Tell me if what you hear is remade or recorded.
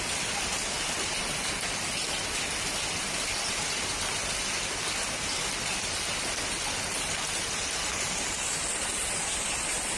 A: recorded